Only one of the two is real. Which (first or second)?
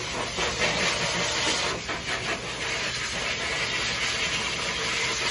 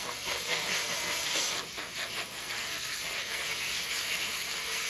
first